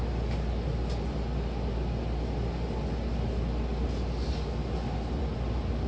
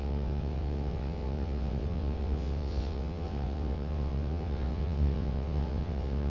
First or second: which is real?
first